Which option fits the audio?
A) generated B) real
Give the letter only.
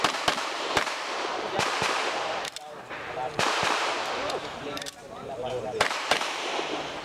A